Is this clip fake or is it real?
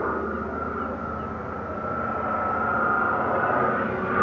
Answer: real